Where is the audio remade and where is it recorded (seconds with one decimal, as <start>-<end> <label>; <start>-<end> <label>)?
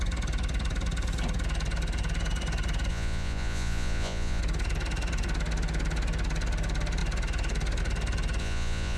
0.0-2.9 recorded; 2.9-4.4 remade; 4.4-8.4 recorded; 8.4-9.0 remade